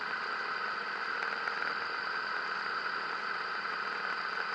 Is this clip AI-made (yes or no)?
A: no